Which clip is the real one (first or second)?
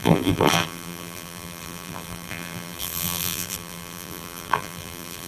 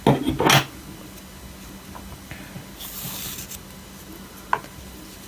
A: second